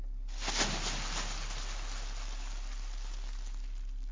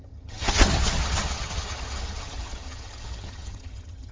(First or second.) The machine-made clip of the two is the second